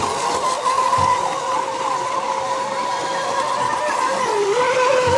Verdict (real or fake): real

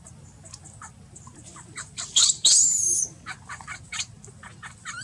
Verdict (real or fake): fake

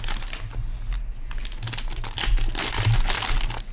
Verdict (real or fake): real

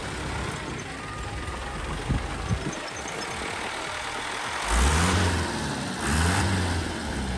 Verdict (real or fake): real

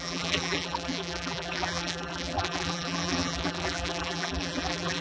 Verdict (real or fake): fake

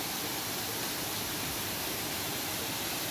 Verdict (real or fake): real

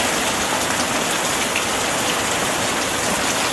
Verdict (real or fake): real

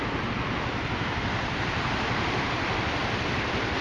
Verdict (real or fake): real